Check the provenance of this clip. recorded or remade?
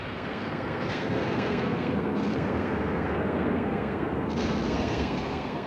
remade